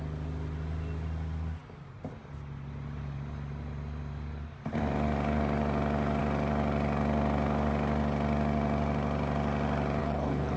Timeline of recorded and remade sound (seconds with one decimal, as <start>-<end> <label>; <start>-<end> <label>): 0.0-10.0 recorded; 10.0-10.6 remade